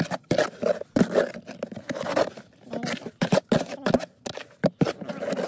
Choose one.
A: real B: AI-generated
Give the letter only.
A